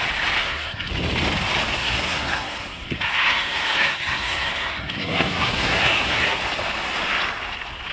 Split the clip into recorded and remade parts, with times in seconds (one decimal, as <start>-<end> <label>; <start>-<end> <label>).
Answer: 0.0-0.4 recorded; 0.4-0.9 remade; 0.9-1.8 recorded; 1.8-6.4 remade; 6.4-7.9 recorded